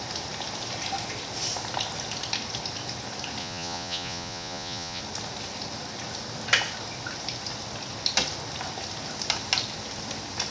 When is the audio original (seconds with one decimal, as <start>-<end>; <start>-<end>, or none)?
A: 0.0-3.4; 5.0-10.5